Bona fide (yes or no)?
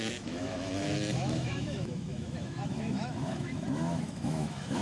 no